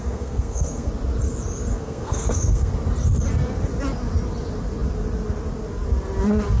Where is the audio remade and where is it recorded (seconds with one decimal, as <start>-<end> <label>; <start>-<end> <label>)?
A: 0.0-0.9 remade; 0.9-1.7 recorded; 1.7-2.7 remade; 2.7-6.6 recorded